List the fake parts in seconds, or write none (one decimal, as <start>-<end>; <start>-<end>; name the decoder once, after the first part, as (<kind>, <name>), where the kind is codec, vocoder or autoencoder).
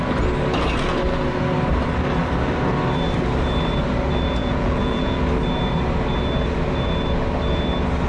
4.4-5.2 (vocoder, Vocos)